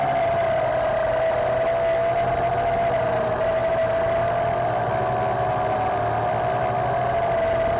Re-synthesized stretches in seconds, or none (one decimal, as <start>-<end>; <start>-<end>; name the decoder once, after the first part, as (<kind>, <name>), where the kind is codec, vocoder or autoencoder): none